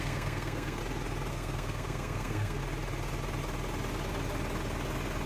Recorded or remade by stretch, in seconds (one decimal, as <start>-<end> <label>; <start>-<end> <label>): 0.0-0.8 remade; 0.8-1.3 recorded; 1.3-2.6 remade; 2.6-5.3 recorded